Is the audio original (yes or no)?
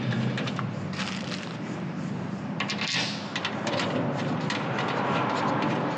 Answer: yes